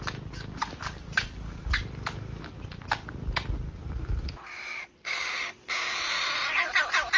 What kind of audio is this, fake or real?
fake